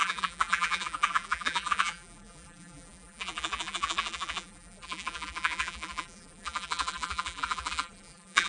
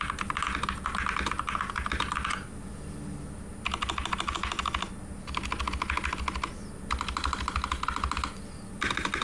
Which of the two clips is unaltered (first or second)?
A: second